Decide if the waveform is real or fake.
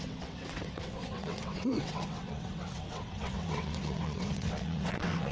fake